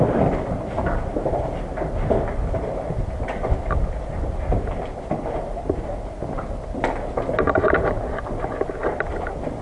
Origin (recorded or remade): recorded